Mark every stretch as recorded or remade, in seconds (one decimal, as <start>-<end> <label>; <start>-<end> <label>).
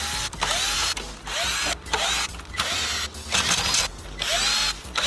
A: 0.0-5.1 recorded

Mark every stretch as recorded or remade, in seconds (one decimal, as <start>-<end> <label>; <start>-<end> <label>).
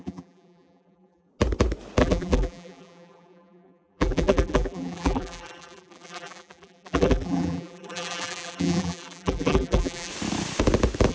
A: 0.0-1.3 remade; 1.3-2.0 recorded; 2.0-10.1 remade; 10.1-11.1 recorded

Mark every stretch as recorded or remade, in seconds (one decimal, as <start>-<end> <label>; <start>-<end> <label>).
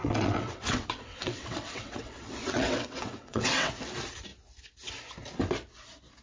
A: 0.0-3.7 remade; 3.7-6.2 recorded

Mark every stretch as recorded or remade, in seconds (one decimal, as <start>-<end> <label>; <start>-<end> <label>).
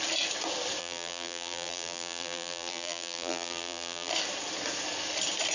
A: 0.0-0.8 recorded; 0.8-4.1 remade; 4.1-5.5 recorded